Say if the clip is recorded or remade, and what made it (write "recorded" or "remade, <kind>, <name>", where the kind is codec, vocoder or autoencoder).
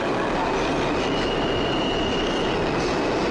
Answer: remade, vocoder, BigVGAN v2